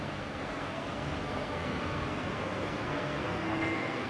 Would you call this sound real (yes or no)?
no